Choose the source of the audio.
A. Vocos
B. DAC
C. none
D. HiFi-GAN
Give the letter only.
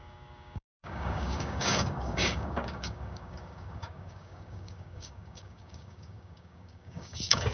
B